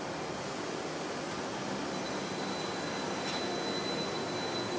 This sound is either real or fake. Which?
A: real